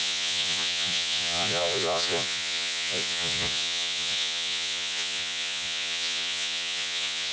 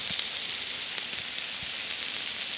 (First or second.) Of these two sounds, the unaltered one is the second